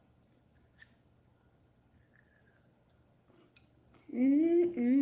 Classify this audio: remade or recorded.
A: recorded